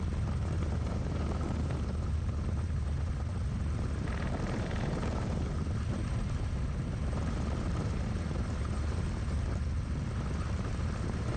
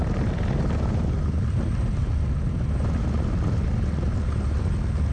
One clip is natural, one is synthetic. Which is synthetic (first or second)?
first